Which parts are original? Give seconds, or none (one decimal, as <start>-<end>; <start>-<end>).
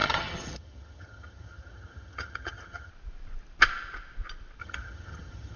2.9-4.6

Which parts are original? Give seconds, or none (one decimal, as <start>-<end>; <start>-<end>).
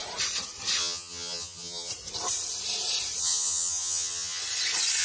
0.0-0.8; 1.9-3.2; 4.4-5.0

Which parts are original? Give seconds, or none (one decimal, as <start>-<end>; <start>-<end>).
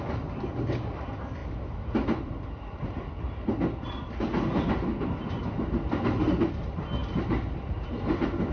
0.0-8.5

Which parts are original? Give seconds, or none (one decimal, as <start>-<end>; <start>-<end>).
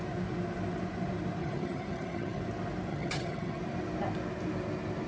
0.0-1.4; 2.4-2.9; 3.6-5.1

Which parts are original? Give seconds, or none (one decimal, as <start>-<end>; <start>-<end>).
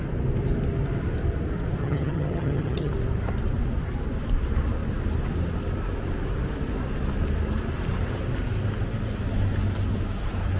0.0-1.8; 2.9-10.6